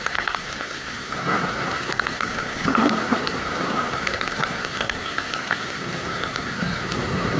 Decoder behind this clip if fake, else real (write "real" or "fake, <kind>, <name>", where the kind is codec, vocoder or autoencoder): fake, codec, SNAC